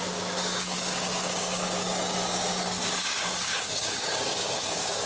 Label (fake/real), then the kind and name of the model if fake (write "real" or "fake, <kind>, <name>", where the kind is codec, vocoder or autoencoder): fake, codec, DAC